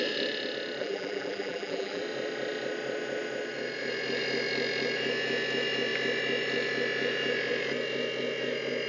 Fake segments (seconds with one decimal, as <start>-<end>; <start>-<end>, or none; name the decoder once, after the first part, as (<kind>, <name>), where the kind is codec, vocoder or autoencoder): 0.8-2.0 (vocoder, BigVGAN v2)